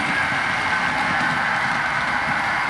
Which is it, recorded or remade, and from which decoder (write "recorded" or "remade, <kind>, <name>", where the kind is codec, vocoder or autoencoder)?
recorded